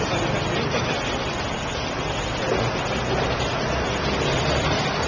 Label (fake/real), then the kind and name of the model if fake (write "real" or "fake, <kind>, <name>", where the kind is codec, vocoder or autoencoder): real